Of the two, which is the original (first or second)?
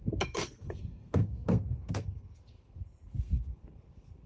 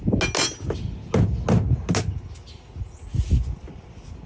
second